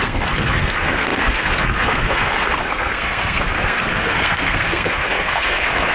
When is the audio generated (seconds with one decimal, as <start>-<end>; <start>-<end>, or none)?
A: 0.0-5.9